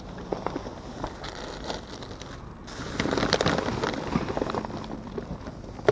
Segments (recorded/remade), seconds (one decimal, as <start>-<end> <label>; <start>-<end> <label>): 0.0-5.9 recorded